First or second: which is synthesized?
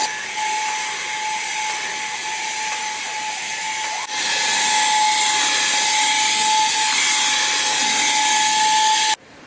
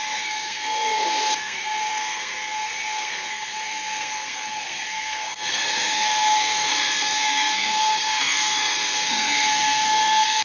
second